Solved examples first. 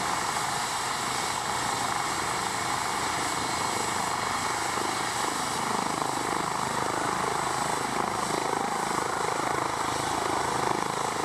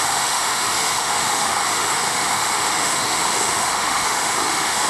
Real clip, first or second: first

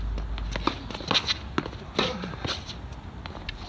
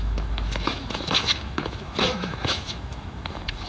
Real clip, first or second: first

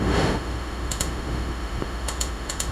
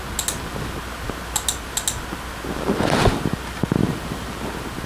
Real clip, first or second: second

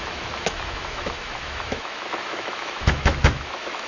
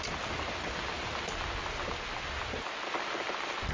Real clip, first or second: second